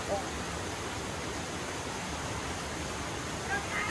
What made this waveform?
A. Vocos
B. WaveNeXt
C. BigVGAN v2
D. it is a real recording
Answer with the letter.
D